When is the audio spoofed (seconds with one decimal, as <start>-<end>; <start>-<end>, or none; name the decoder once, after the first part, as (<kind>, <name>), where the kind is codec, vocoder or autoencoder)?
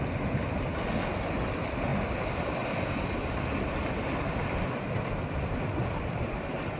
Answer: none